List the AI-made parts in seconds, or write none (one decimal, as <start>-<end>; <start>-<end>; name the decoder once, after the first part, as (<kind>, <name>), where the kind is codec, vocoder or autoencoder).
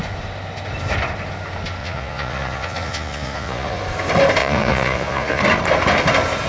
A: 1.8-3.8 (vocoder, Vocos); 4.4-5.4